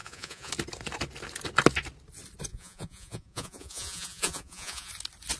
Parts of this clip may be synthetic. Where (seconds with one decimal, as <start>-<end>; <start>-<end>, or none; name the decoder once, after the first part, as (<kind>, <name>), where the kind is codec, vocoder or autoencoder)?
0.0-0.5 (vocoder, Vocos); 2.5-4.9